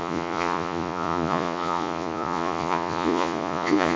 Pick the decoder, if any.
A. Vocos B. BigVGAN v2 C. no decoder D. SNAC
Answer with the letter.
A